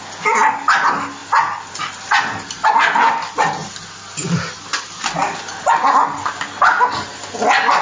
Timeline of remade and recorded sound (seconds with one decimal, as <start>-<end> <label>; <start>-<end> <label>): 0.0-1.2 recorded; 1.2-1.7 remade; 1.7-3.6 recorded; 3.6-4.8 remade; 4.8-7.8 recorded